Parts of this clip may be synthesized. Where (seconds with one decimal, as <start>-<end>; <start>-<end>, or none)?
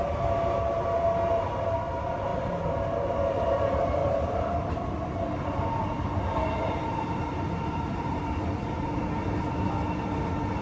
4.0-9.0